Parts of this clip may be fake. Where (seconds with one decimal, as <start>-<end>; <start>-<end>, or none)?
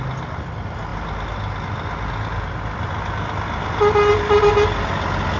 none